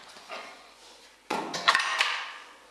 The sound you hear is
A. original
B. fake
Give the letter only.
B